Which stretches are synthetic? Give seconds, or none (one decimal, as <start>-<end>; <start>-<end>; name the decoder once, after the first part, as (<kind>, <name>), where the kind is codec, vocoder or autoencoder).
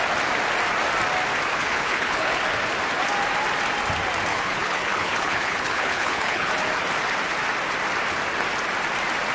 1.5-2.4 (codec, HILCodec); 4.3-6.5